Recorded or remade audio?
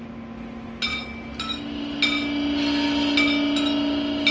recorded